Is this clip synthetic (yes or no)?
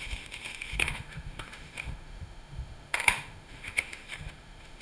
yes